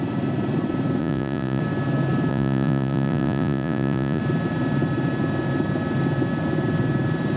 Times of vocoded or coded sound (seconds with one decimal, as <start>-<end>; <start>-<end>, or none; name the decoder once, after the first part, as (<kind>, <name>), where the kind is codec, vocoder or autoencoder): 1.0-1.6 (vocoder, Vocos); 2.3-4.2